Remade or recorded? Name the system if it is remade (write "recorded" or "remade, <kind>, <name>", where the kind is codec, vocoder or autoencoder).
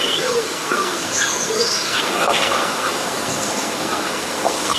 remade, codec, SNAC